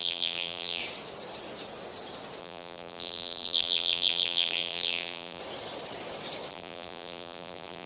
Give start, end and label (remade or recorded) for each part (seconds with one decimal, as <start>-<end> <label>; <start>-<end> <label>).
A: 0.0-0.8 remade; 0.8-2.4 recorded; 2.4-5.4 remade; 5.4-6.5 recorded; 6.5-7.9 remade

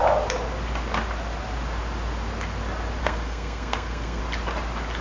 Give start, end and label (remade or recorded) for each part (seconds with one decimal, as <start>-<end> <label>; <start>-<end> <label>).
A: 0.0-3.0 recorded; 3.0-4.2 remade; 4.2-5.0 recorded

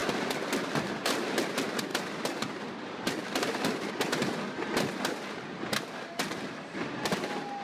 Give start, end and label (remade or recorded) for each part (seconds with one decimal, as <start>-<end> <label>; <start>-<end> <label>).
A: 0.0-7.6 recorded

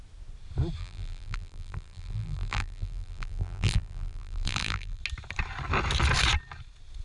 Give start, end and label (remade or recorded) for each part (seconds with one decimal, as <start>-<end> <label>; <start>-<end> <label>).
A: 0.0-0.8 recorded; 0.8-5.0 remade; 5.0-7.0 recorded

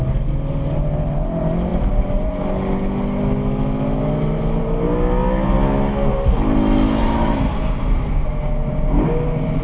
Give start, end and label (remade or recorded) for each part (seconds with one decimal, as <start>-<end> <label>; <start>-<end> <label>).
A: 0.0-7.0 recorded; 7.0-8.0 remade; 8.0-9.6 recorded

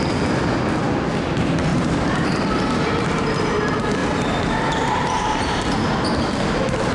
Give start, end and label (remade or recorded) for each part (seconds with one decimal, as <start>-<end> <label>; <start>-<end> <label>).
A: 0.0-1.7 recorded; 1.7-2.4 remade; 2.4-4.0 recorded; 4.0-5.6 remade; 5.6-6.9 recorded

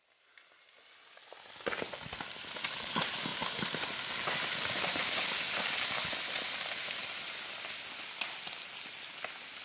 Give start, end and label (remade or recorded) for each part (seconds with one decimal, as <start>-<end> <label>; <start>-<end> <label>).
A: 0.0-9.6 recorded